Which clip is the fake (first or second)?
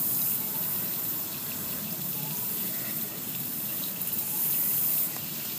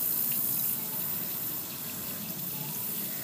first